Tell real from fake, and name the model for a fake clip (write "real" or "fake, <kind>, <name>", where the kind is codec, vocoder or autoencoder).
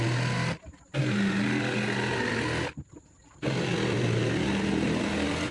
real